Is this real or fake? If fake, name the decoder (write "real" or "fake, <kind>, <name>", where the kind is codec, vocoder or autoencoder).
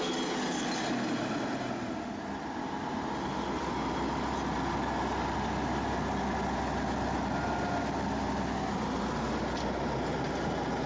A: real